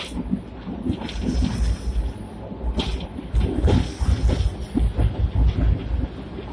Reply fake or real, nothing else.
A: real